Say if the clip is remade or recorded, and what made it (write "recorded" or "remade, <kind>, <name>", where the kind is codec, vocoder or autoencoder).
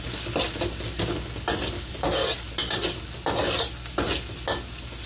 recorded